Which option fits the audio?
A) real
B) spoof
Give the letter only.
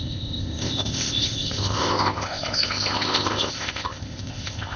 B